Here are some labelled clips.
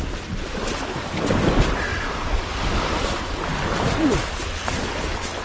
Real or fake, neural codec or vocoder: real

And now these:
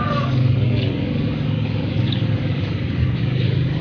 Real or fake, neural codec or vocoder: fake, codec, DAC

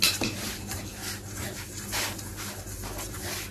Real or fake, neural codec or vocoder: real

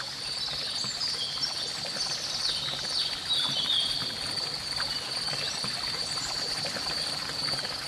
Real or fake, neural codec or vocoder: real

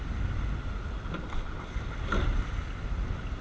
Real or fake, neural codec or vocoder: real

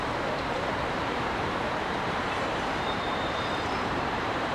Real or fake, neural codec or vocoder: fake, vocoder, BigVGAN v2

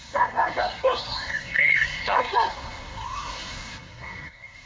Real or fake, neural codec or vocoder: fake, codec, SNAC